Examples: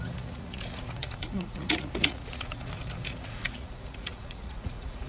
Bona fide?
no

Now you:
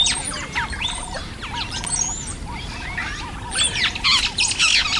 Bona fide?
yes